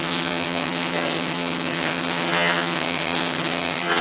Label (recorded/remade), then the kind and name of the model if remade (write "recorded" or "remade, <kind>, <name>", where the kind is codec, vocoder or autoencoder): remade, vocoder, HiFi-GAN